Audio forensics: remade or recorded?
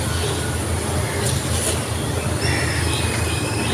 recorded